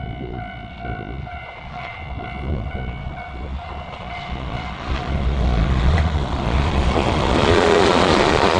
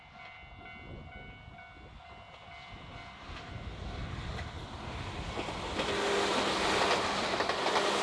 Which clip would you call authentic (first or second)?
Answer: second